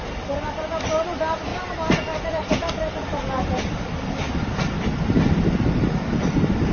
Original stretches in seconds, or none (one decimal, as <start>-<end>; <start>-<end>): 0.0-6.7